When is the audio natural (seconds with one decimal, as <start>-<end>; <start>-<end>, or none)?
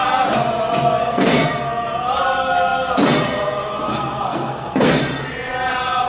0.0-1.0; 1.6-3.9; 5.0-6.1